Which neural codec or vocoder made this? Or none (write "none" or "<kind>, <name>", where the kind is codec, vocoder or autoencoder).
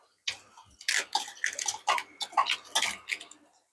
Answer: none